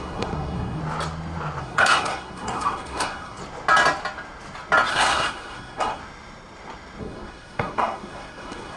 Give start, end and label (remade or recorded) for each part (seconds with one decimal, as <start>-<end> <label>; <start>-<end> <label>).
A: 0.0-0.8 remade; 0.8-1.6 recorded; 1.6-3.4 remade; 3.4-4.9 recorded; 4.9-6.0 remade; 6.0-7.0 recorded; 7.0-8.8 remade